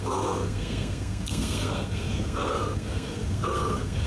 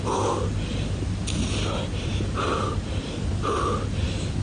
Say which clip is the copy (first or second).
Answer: first